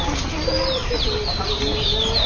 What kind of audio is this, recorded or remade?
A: recorded